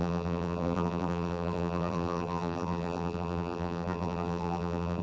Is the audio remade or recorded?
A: remade